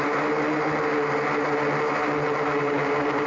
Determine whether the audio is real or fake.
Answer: real